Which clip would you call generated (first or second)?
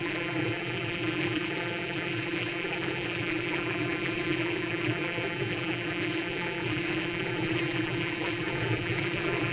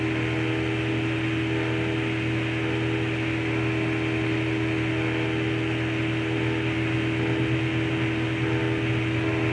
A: first